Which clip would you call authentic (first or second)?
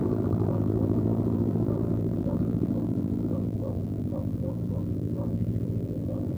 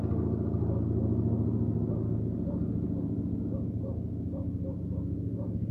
second